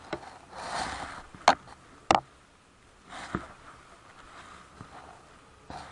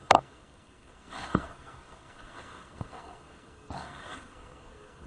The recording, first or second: first